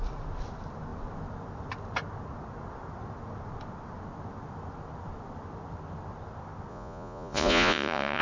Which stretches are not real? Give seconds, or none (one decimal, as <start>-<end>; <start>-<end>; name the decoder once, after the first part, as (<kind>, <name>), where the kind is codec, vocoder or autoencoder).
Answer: 6.7-8.2 (vocoder, Vocos)